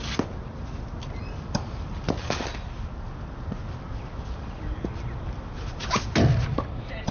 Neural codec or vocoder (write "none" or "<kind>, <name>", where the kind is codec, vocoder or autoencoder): none